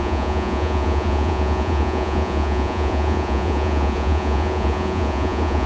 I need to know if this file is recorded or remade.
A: remade